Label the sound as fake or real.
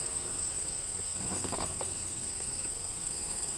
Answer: fake